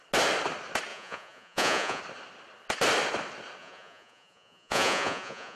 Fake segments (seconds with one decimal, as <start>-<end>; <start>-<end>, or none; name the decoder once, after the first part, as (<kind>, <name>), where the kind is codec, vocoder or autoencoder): 0.9-2.0 (vocoder, Vocos); 3.6-5.6